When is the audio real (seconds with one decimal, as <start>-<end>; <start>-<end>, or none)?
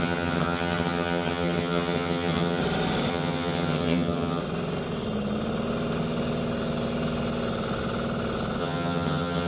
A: 2.6-3.1; 4.4-8.6